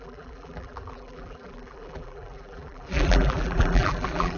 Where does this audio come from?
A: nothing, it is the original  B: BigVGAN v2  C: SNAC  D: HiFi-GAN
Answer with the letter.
B